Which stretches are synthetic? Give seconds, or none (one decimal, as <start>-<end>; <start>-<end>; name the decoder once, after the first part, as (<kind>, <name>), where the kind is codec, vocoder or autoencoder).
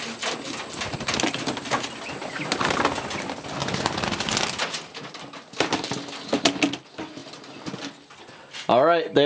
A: none